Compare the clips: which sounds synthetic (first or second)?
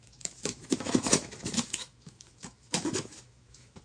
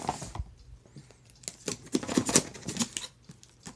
first